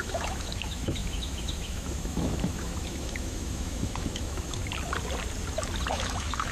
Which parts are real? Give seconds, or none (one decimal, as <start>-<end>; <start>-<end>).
4.6-5.9